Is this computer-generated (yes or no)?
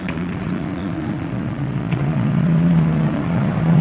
yes